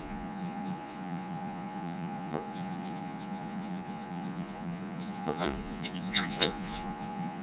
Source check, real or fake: fake